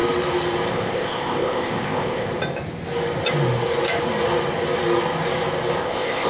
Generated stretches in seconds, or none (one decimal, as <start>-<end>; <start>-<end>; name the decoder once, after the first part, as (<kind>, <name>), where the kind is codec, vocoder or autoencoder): 0.7-2.3 (codec, ZipCodec); 5.8-6.3